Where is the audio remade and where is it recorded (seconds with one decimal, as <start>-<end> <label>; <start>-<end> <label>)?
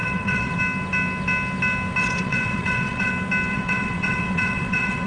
0.0-0.6 remade; 0.6-2.0 recorded; 2.0-3.1 remade; 3.1-3.5 recorded; 3.5-5.1 remade